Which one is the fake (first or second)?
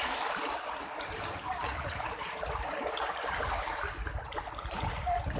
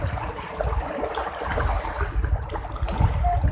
first